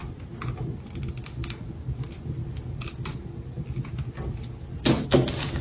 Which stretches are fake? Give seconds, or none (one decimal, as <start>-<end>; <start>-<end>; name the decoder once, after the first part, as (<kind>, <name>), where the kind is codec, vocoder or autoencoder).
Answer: none